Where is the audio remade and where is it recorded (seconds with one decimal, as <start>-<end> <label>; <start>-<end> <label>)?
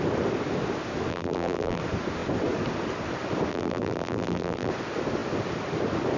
0.0-1.1 recorded; 1.1-1.8 remade; 1.8-3.5 recorded; 3.5-4.7 remade; 4.7-6.2 recorded